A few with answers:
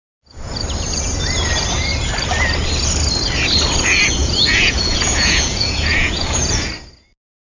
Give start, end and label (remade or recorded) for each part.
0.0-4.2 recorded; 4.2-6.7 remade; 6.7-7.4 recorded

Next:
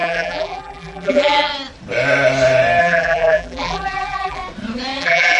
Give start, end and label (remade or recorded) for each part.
0.0-1.5 remade; 1.5-2.8 recorded; 2.8-4.4 remade; 4.4-5.0 recorded; 5.0-5.4 remade